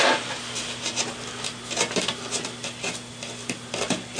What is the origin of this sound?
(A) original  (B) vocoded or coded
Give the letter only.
A